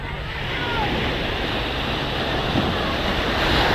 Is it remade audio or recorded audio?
recorded